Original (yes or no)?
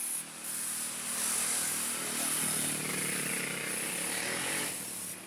yes